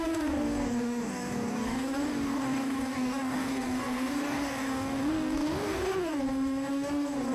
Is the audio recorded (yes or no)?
no